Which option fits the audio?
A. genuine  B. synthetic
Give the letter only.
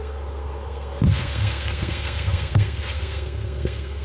B